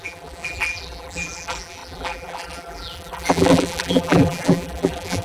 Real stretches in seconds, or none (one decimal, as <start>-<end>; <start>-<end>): none